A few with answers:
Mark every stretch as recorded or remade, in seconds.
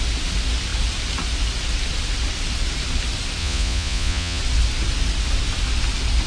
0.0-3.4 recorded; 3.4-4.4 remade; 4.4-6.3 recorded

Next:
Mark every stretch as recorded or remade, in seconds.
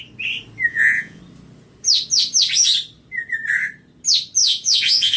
0.0-0.7 recorded; 0.7-1.2 remade; 1.2-4.4 recorded; 4.4-5.2 remade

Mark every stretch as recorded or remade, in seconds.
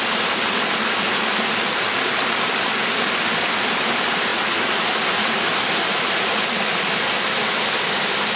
0.0-8.4 recorded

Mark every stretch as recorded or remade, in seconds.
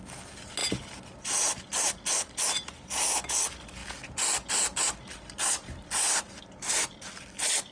0.0-7.7 recorded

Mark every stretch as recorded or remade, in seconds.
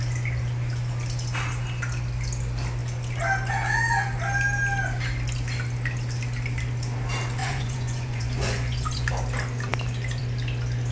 0.0-7.4 recorded; 7.4-9.1 remade; 9.1-10.9 recorded